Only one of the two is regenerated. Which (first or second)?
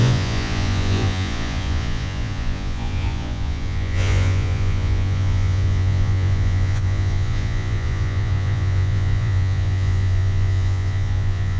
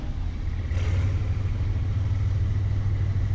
first